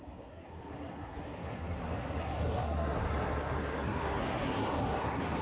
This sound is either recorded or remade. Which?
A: remade